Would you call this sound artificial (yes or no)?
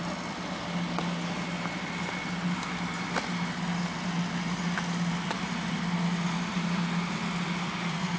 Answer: no